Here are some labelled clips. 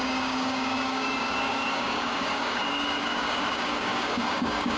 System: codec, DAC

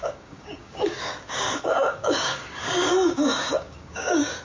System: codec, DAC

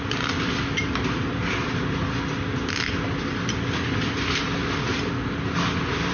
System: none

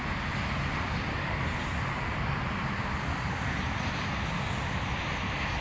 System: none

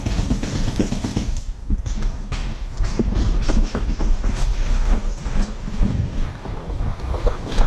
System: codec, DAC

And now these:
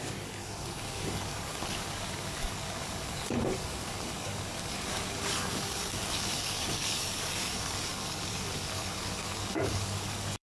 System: codec, DAC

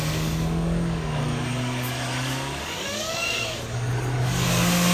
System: codec, DAC